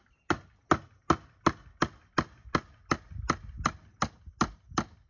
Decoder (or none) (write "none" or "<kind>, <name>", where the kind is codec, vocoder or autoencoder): none